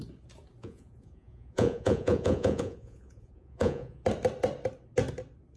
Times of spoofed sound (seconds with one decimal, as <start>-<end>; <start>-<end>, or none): 0.6-4.0